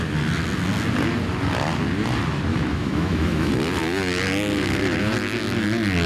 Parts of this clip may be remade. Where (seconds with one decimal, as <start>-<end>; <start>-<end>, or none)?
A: 2.5-3.5